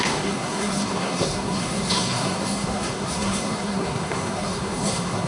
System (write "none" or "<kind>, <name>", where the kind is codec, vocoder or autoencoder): codec, SNAC